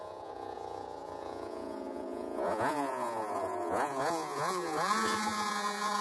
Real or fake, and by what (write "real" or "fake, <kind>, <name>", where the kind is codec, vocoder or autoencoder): fake, vocoder, Vocos